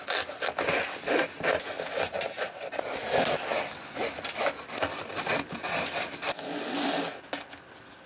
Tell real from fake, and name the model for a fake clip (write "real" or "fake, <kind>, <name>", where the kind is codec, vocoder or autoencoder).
real